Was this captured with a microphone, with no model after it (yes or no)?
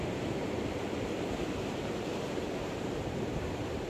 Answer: no